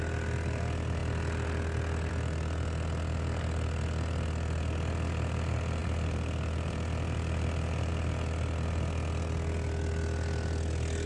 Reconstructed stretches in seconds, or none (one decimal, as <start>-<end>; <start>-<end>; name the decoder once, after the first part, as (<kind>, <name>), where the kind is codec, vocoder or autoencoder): 5.8-7.9 (vocoder, BigVGAN v2)

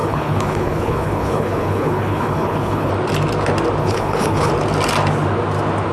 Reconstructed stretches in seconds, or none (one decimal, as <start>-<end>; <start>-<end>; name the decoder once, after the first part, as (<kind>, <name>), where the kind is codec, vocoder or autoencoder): 0.0-2.9 (codec, HILCodec); 3.8-4.5

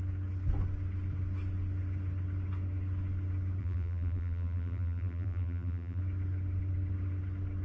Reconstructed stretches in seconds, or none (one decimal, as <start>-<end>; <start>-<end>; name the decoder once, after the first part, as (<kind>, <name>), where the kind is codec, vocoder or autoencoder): 3.6-6.0 (vocoder, BigVGAN v2)

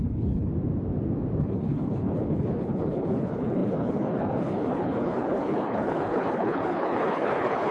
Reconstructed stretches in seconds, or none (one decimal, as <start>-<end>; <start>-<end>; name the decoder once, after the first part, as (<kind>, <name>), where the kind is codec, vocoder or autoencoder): 0.0-0.5 (codec, HILCodec); 1.4-7.7

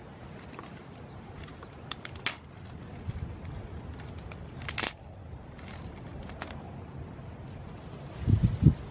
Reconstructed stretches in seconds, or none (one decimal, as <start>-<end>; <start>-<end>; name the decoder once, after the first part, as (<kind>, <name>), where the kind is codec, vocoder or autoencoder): 1.5-2.1 (vocoder, BigVGAN v2)

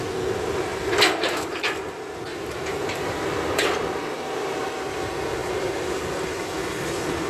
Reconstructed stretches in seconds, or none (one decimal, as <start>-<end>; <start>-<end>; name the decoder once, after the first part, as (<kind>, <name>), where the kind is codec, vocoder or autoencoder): 0.7-1.6 (vocoder, BigVGAN v2); 2.3-3.7; 5.4-6.0

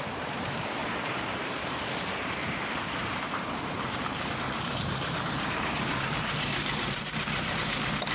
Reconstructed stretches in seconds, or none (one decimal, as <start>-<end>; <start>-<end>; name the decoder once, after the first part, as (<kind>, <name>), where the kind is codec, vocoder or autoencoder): 0.0-8.1 (vocoder, BigVGAN v2)

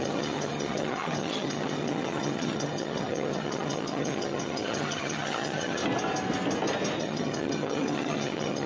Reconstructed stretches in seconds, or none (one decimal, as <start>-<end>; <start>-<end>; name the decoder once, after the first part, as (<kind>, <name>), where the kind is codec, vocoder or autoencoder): 0.0-5.8 (vocoder, HiFi-GAN); 7.0-8.7